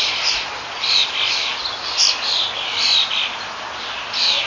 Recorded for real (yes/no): yes